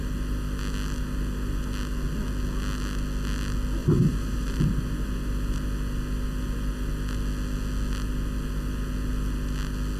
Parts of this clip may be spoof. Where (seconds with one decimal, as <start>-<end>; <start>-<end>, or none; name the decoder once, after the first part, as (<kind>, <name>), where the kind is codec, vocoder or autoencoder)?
3.8-4.6 (vocoder, BigVGAN v2)